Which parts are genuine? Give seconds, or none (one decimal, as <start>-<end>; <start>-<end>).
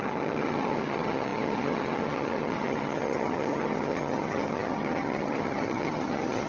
none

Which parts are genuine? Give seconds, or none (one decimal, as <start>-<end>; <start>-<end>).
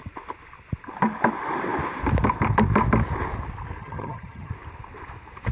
0.0-3.8; 4.5-5.5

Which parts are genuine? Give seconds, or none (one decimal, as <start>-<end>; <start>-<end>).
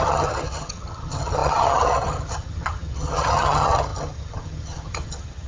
none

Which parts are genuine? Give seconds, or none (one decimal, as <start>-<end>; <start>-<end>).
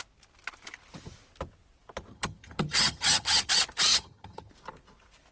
0.0-2.1; 3.5-3.9; 4.5-5.3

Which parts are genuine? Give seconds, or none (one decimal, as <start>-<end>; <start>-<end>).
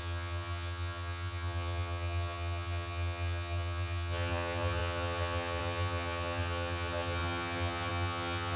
none